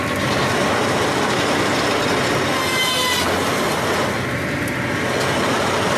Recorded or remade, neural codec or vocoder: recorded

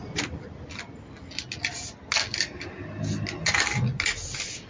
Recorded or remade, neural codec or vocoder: recorded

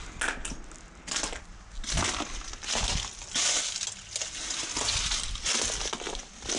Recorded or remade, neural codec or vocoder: recorded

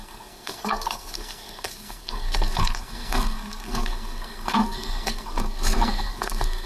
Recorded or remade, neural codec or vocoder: remade, codec, SNAC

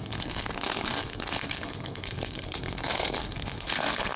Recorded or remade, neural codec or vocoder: remade, codec, SNAC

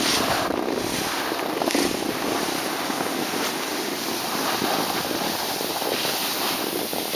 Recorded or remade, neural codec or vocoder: recorded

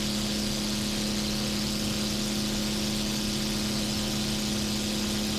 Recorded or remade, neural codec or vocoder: recorded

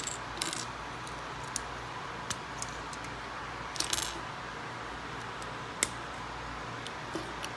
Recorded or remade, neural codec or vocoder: recorded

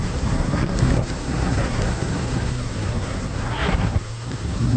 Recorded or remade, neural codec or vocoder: remade, codec, SNAC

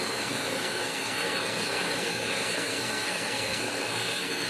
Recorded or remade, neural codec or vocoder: remade, codec, SNAC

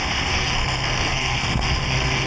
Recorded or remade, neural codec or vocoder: remade, codec, SNAC